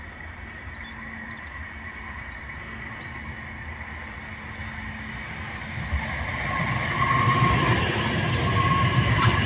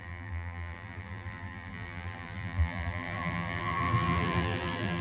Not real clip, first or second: second